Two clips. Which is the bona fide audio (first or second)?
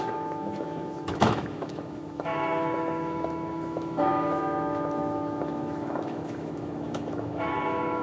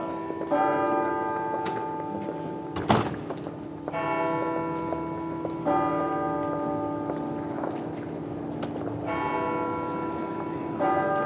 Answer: second